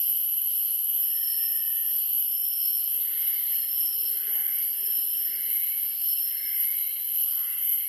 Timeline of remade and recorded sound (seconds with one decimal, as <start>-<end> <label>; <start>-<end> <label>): 0.0-7.9 recorded